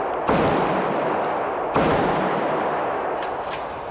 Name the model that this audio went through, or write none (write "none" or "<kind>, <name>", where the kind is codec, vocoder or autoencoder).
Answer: none